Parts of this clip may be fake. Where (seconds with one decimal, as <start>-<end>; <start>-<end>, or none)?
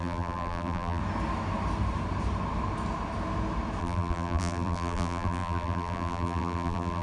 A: 0.0-1.0; 3.8-7.0